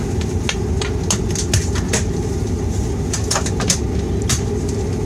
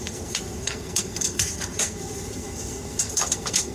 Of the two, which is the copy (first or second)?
second